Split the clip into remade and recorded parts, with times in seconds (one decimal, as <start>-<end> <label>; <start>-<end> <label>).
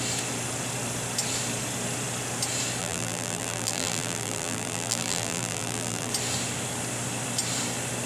0.0-2.8 recorded; 2.8-6.1 remade; 6.1-8.1 recorded